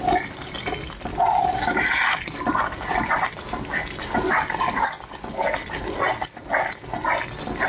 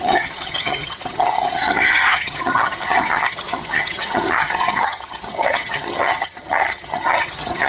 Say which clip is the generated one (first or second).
second